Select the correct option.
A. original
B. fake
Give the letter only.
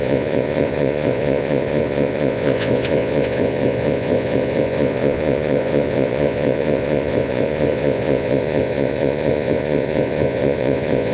B